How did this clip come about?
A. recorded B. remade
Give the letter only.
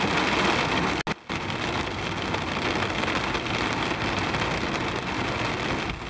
A